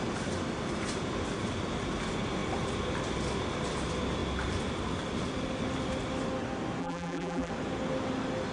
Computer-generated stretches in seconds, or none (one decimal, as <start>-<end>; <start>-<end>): 6.8-7.5